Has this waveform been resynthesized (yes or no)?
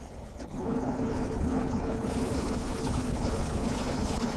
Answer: yes